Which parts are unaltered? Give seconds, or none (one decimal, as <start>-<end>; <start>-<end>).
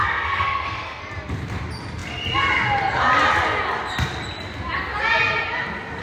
1.0-6.0